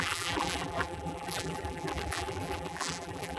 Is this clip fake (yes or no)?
yes